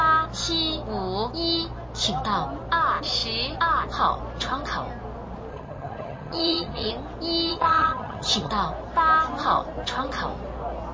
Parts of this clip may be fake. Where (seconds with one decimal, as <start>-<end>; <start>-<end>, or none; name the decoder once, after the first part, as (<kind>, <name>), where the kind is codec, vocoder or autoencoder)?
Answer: 5.5-6.9 (vocoder, HiFi-GAN); 7.5-8.5